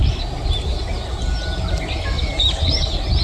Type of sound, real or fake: real